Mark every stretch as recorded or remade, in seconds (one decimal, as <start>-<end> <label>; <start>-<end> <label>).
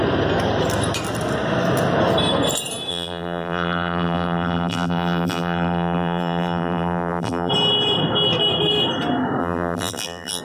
0.0-2.9 recorded; 2.9-7.5 remade; 7.5-9.4 recorded; 9.4-10.4 remade